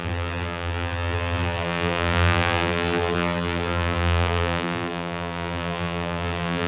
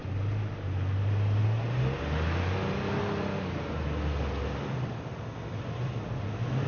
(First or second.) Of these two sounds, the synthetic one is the first